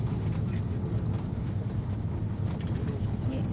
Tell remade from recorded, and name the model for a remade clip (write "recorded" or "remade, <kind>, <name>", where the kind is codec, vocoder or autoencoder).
recorded